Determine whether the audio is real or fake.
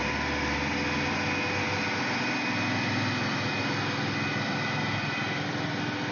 real